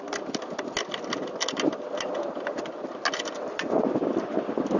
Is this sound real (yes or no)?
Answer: yes